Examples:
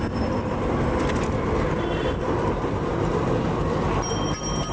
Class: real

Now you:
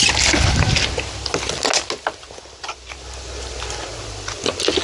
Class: real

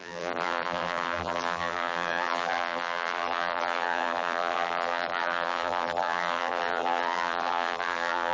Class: fake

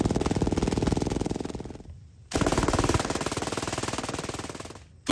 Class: real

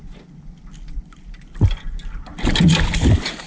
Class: real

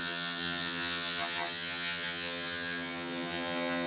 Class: fake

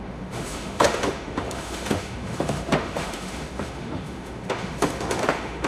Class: fake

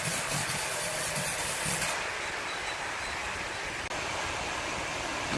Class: real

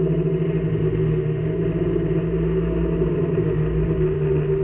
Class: real